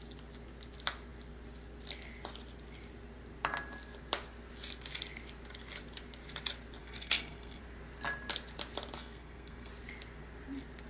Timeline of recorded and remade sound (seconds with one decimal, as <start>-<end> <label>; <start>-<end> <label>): 0.0-6.8 recorded; 6.8-7.6 remade; 7.6-9.0 recorded; 9.0-9.7 remade; 9.7-10.9 recorded